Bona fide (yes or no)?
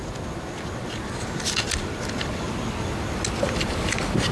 yes